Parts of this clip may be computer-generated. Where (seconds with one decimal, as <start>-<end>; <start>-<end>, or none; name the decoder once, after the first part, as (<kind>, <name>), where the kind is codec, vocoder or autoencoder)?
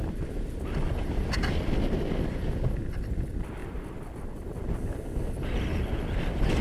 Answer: none